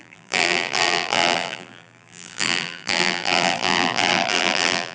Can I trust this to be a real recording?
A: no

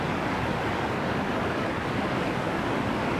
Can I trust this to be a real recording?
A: no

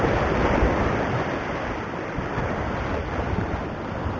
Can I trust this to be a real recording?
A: no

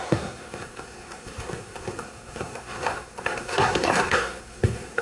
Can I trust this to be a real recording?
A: no